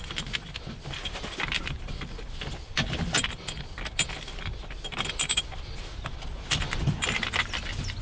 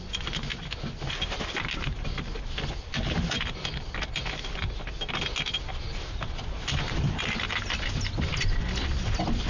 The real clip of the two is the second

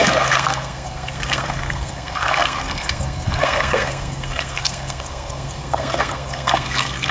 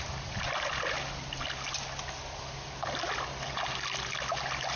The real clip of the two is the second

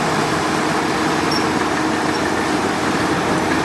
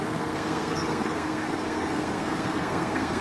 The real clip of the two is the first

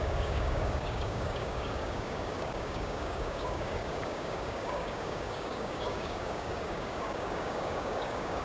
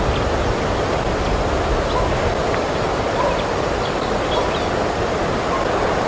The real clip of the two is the second